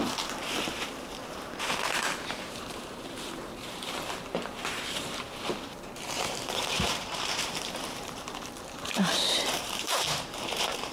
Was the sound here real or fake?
fake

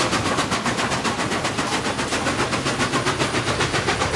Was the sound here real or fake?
real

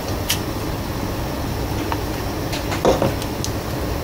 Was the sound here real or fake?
real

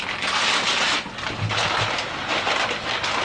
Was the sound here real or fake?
real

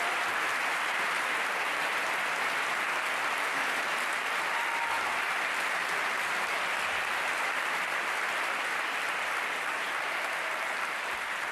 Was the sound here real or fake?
fake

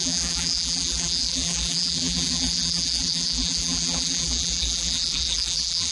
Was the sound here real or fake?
fake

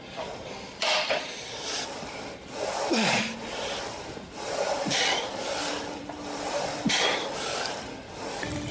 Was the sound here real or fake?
fake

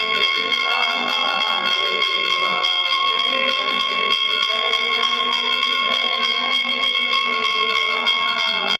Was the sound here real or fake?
fake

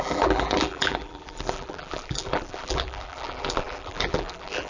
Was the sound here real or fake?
fake